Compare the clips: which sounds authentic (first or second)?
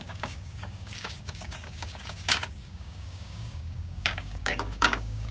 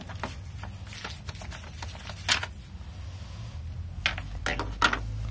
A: second